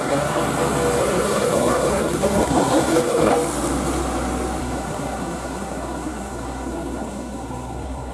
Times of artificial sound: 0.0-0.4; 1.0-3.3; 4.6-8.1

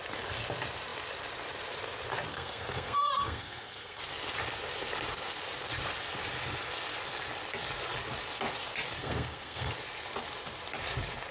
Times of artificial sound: 2.3-4.0; 9.0-9.7

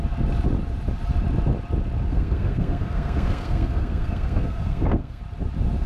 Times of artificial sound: 2.1-5.2